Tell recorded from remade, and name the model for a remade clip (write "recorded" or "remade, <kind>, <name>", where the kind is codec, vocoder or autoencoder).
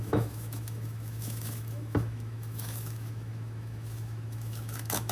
remade, autoencoder, DAC-VAE